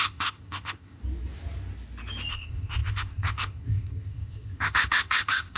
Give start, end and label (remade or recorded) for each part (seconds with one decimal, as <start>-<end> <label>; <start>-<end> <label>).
0.0-1.0 remade; 1.0-2.3 recorded; 2.3-5.6 remade